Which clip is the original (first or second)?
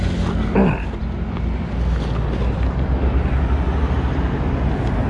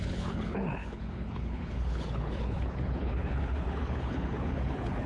first